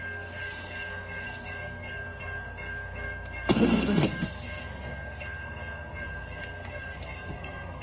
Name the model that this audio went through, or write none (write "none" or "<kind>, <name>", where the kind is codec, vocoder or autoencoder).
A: codec, SNAC